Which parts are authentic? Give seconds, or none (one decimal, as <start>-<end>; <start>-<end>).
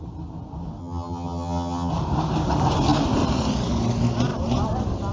0.0-0.8; 1.9-5.1